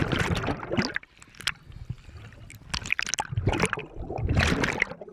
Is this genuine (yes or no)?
yes